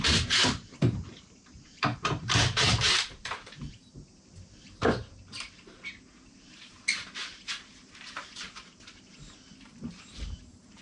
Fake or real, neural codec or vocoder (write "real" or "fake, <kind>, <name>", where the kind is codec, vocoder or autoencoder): fake, vocoder, BigVGAN v2